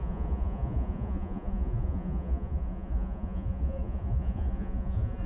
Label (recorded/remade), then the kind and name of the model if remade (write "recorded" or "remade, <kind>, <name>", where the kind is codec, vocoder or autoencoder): remade, vocoder, Vocos